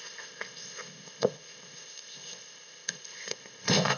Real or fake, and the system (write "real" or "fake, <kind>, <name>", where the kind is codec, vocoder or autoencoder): fake, codec, ZipCodec